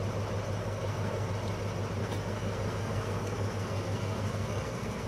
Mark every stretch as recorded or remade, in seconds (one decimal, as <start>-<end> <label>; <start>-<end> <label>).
0.0-0.6 recorded; 0.6-1.3 remade; 1.3-2.0 recorded; 2.0-5.1 remade